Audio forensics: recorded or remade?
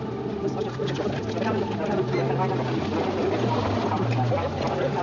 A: recorded